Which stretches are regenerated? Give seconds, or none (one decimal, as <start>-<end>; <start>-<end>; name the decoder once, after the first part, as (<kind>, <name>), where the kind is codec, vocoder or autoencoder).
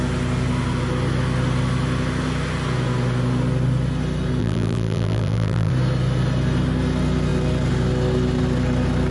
4.4-5.7 (vocoder, BigVGAN v2)